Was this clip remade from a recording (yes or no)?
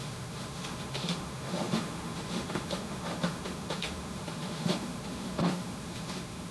yes